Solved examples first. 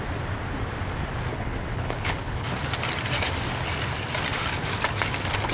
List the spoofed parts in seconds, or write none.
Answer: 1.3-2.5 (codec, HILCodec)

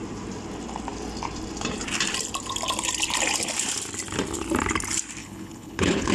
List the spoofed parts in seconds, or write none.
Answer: 5.2-6.1 (codec, HILCodec)

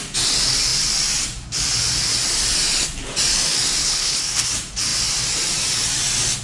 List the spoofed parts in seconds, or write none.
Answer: 3.8-4.5 (codec, HILCodec)

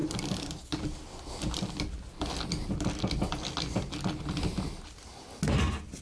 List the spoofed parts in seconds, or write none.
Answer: none

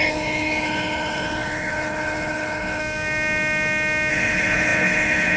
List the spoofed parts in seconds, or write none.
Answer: 0.0-2.8 (codec, HILCodec); 4.1-5.4

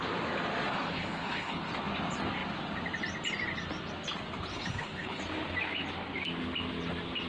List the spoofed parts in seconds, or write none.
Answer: 0.7-1.7 (codec, HILCodec); 4.5-5.2